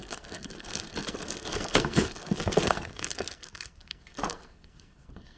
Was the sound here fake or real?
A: fake